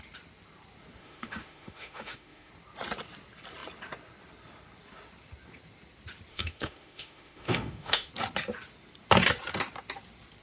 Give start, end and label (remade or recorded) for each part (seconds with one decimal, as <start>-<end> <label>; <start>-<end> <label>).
0.0-1.0 recorded; 1.0-2.5 remade; 2.5-6.3 recorded; 6.3-8.1 remade; 8.1-10.4 recorded

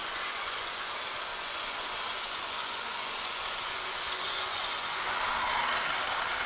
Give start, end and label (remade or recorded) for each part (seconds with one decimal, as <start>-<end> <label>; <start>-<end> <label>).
0.0-0.9 remade; 0.9-1.3 recorded; 1.3-5.2 remade; 5.2-6.5 recorded